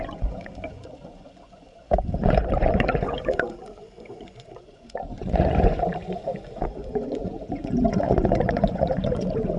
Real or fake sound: fake